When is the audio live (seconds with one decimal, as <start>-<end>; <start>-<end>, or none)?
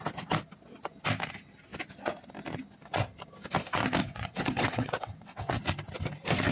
0.0-4.0; 5.6-6.5